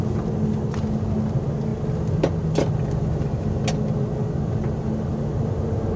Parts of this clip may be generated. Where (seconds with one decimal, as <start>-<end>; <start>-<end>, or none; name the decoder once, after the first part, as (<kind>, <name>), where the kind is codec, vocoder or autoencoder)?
none